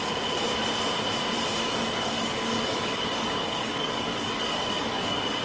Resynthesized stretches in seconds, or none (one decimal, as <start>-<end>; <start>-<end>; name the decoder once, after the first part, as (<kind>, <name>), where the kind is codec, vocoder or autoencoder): 1.6-5.4 (codec, DAC)